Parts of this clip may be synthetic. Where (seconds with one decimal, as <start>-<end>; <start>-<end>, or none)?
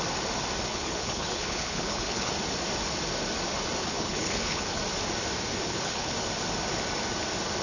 0.7-2.3; 3.8-4.8; 5.6-6.1